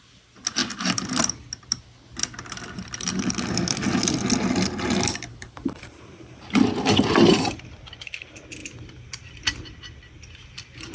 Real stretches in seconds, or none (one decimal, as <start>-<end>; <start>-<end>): 0.0-5.3; 6.6-10.9